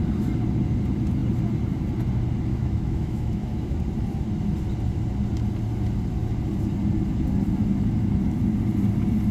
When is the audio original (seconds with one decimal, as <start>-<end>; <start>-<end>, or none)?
0.0-2.5; 3.8-9.3